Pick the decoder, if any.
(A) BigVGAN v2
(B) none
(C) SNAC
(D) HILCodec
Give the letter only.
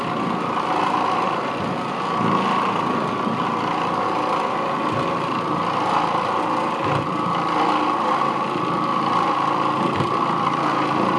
B